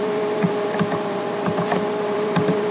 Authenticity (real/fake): fake